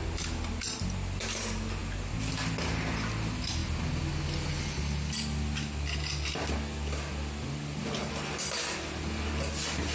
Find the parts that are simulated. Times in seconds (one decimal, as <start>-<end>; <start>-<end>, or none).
none